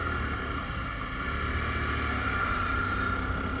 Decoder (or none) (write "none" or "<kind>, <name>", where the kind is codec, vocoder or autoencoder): none